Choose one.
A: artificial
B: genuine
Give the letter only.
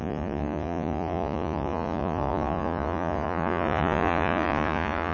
A